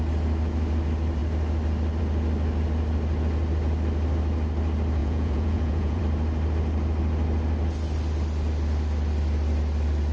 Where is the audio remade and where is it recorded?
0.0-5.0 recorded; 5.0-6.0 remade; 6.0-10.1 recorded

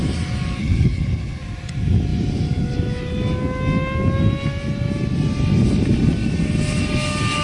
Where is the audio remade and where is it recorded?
0.0-0.6 recorded; 0.6-1.4 remade; 1.4-7.4 recorded

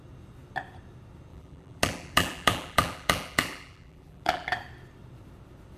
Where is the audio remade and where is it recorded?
0.0-1.3 recorded; 1.3-4.5 remade; 4.5-5.8 recorded

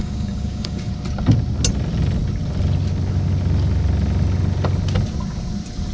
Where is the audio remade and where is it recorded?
0.0-0.9 remade; 0.9-5.9 recorded

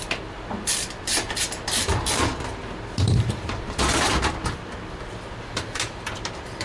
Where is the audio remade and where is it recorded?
0.0-6.6 remade

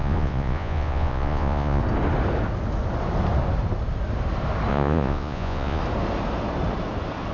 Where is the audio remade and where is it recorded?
0.0-1.8 remade; 1.8-4.7 recorded; 4.7-5.8 remade; 5.8-7.3 recorded

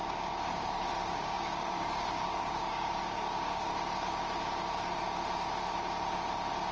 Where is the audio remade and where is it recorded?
0.0-0.5 recorded; 0.5-3.7 remade; 3.7-6.7 recorded

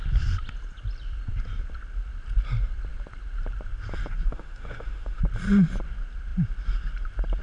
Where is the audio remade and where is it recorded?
0.0-4.3 recorded; 4.3-5.2 remade; 5.2-7.4 recorded